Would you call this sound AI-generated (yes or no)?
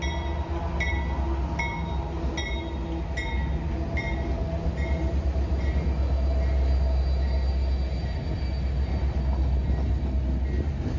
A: no